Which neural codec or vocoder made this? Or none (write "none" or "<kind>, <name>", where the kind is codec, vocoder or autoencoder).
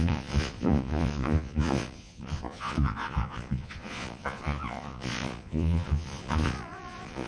vocoder, Vocos